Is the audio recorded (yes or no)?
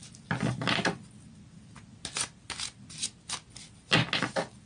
yes